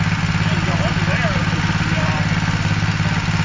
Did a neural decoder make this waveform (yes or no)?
no